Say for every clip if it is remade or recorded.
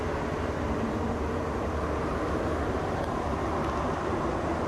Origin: recorded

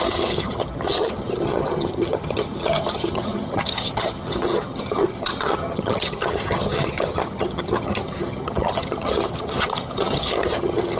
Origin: remade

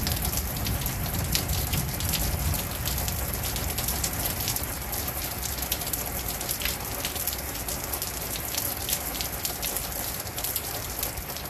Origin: recorded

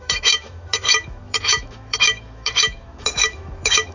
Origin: remade